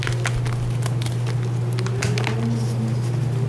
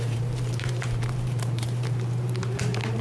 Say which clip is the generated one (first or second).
second